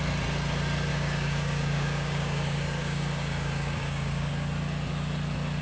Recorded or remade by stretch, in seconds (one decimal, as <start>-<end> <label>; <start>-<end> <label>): 0.0-0.9 recorded; 0.9-4.3 remade; 4.3-5.6 recorded